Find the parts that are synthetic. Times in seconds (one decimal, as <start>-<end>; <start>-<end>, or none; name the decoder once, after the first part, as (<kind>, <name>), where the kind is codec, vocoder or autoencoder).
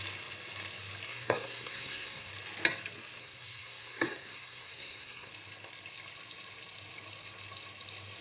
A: 1.1-2.3 (codec, SNAC); 3.2-5.3